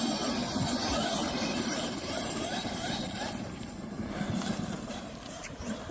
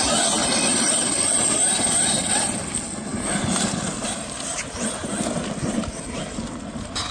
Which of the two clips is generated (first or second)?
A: first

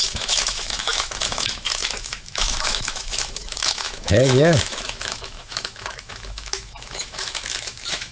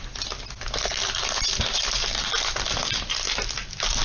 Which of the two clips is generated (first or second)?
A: first